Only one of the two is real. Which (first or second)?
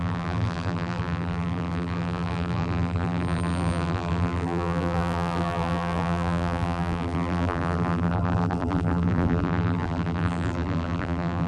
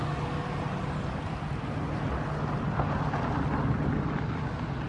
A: second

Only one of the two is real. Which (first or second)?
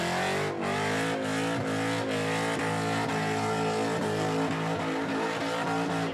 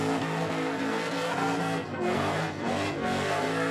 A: first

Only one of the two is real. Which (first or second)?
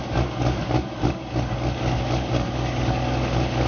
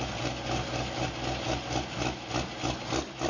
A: second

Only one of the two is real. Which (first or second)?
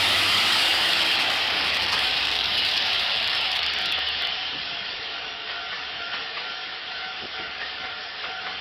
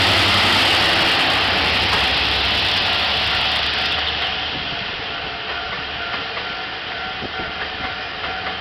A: second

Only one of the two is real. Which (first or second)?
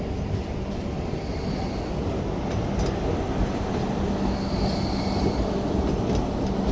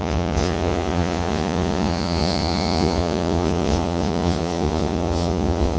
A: first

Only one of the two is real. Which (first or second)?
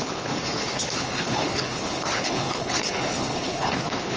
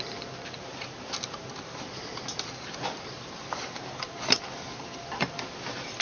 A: second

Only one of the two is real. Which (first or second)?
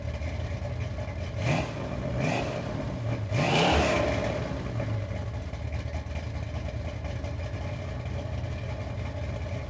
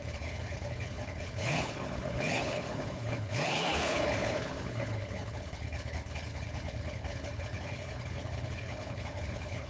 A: first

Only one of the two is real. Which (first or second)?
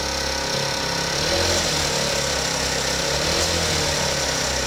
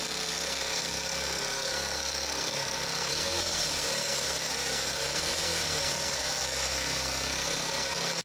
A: first